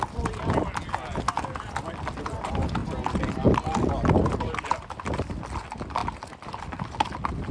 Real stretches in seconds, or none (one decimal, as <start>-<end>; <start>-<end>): 0.0-7.5